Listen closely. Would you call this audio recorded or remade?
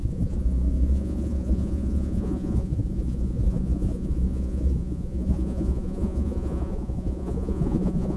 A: remade